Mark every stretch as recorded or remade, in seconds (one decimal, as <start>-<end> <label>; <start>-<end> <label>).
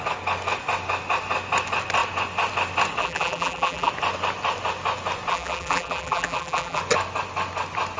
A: 0.0-3.0 recorded; 3.0-3.9 remade; 3.9-5.3 recorded; 5.3-6.8 remade; 6.8-8.0 recorded